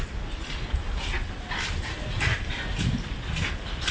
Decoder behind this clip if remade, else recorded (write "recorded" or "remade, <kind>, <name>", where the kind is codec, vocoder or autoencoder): recorded